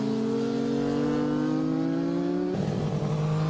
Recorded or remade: recorded